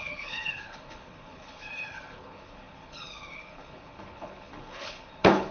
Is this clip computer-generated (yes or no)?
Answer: yes